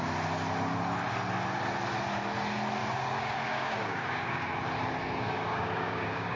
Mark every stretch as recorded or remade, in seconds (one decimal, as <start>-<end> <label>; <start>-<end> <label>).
0.0-2.8 recorded; 2.8-4.5 remade; 4.5-5.0 recorded; 5.0-6.4 remade